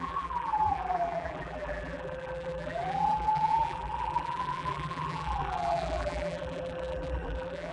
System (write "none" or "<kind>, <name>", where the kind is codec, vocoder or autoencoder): vocoder, BigVGAN v2